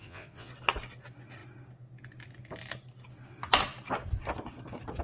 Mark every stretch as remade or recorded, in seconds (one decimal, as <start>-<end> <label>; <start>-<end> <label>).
0.0-0.5 remade; 0.5-5.0 recorded